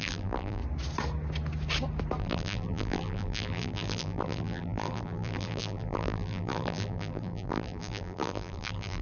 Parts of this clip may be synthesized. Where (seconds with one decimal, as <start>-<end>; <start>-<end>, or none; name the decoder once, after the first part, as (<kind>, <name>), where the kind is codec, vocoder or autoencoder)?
0.0-0.6 (vocoder, BigVGAN v2); 2.2-9.0